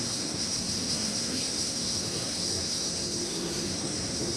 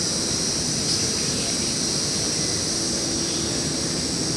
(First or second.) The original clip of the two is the second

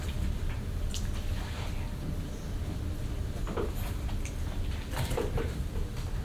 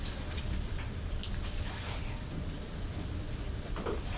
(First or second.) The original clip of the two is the first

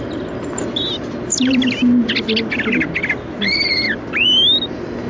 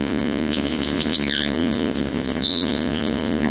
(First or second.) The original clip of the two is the first